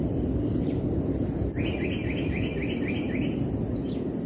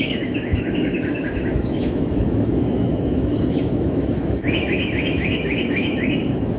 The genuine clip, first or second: first